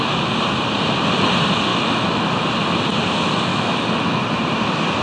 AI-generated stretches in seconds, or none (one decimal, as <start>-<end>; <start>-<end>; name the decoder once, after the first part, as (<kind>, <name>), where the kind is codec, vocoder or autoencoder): 1.7-2.2 (autoencoder, DAC-VAE); 3.5-4.2